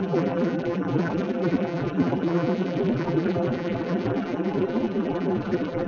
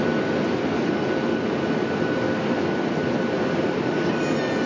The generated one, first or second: first